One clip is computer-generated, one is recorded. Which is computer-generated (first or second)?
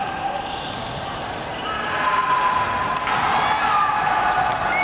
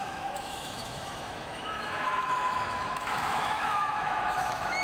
second